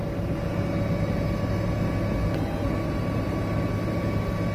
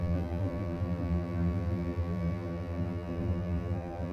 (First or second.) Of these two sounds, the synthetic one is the second